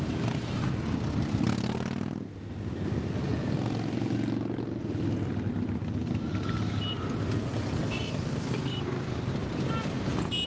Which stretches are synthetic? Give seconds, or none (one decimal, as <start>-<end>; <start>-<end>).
8.6-9.2